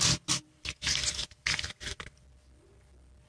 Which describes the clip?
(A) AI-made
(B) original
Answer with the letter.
B